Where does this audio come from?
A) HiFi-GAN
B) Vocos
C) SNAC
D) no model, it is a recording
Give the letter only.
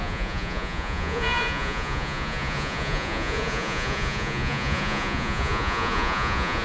B